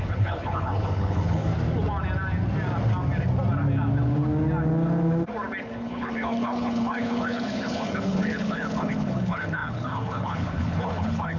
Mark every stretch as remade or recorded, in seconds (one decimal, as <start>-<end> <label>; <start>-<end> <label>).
0.0-1.5 remade; 1.5-5.6 recorded; 5.6-11.4 remade